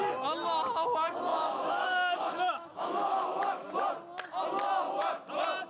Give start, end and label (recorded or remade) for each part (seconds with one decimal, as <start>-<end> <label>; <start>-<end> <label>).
0.0-1.3 recorded; 1.3-3.7 remade; 3.7-5.7 recorded

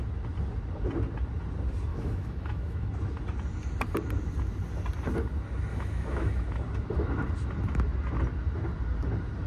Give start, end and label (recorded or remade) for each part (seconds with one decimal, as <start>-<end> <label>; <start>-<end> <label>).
0.0-1.9 recorded; 1.9-2.9 remade; 2.9-5.7 recorded; 5.7-6.4 remade; 6.4-9.5 recorded